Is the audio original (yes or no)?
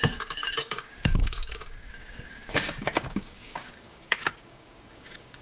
no